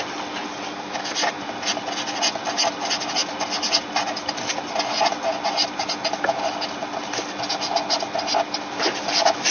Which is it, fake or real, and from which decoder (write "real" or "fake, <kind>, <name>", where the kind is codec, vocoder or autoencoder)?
real